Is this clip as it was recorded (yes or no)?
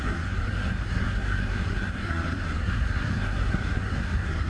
no